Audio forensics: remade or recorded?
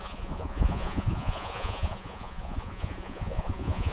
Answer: remade